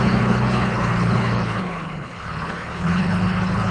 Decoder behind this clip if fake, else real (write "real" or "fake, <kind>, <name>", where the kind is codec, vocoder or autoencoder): fake, codec, HILCodec